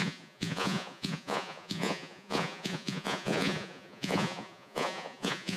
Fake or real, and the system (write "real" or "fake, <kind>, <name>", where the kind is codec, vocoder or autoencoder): fake, vocoder, Vocos